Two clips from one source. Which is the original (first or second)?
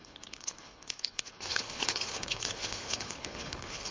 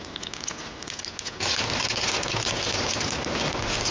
second